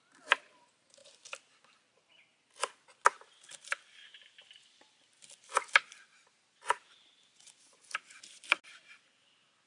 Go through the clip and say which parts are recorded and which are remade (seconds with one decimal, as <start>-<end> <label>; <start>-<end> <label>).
0.0-9.7 recorded